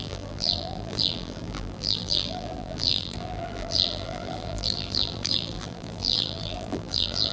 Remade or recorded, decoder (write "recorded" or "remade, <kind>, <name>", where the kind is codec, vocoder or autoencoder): remade, vocoder, BigVGAN v2